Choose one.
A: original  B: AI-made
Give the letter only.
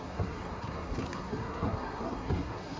B